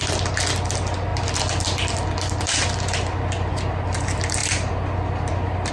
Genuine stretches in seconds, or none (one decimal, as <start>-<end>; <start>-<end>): 0.0-5.7